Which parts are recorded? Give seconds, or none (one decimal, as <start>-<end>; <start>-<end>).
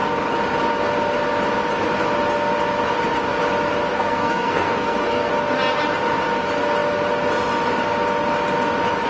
0.0-3.9; 5.3-9.1